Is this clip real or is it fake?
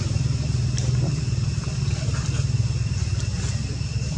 fake